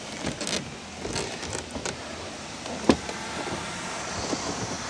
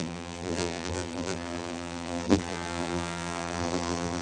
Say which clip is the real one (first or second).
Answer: first